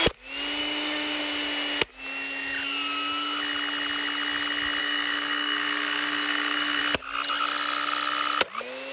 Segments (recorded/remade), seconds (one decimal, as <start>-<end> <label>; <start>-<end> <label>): 0.0-0.6 recorded; 0.6-1.2 remade; 1.2-4.8 recorded; 4.8-6.8 remade; 6.8-8.9 recorded